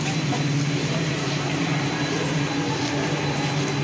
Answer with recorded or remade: recorded